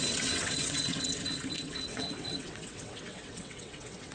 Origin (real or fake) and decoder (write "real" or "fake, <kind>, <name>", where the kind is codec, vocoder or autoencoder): fake, vocoder, WaveNeXt